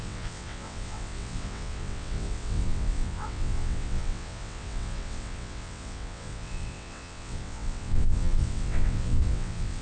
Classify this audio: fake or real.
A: fake